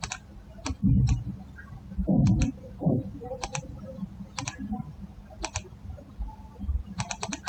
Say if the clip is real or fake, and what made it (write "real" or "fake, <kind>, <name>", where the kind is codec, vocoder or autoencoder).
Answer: real